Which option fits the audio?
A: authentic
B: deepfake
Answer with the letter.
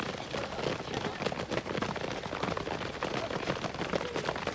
A